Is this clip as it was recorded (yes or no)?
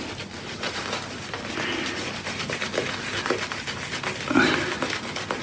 yes